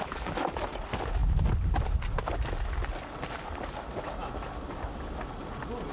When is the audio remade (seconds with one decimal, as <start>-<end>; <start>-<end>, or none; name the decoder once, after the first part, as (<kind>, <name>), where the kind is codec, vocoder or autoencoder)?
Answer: none